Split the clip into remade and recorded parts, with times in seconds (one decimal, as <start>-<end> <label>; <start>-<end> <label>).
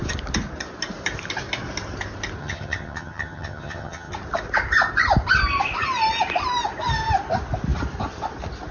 0.0-2.4 recorded; 2.4-4.1 remade; 4.1-8.7 recorded